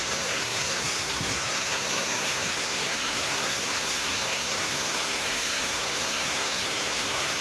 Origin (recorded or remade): remade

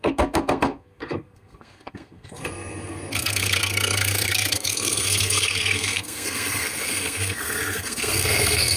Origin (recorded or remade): remade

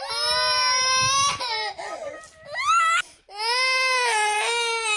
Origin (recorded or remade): recorded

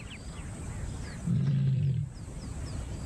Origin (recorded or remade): recorded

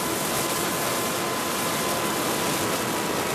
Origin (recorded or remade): recorded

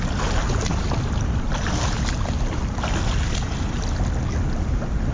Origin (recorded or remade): recorded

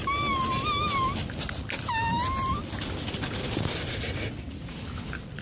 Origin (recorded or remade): recorded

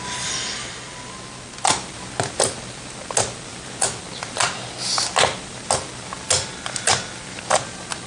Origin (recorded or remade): recorded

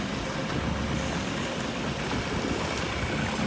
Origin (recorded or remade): recorded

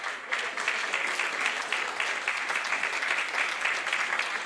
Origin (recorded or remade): recorded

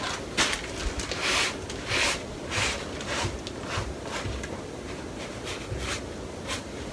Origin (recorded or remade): recorded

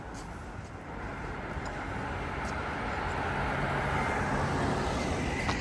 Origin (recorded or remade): recorded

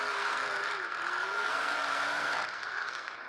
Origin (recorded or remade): remade